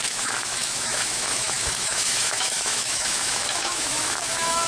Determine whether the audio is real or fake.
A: fake